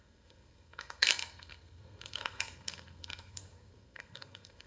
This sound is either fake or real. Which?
fake